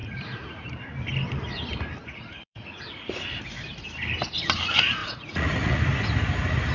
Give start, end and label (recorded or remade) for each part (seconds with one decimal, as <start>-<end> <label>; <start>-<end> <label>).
0.0-0.7 remade; 0.7-2.0 recorded; 2.0-3.4 remade; 3.4-5.0 recorded; 5.0-5.8 remade; 5.8-6.7 recorded